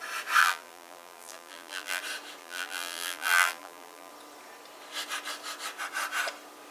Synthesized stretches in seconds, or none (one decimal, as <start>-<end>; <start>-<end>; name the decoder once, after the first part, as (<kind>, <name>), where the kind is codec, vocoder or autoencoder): 0.4-2.0 (vocoder, BigVGAN v2); 2.4-4.1